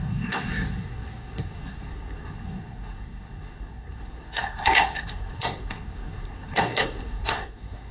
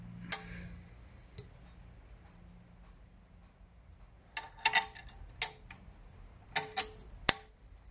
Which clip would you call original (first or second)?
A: second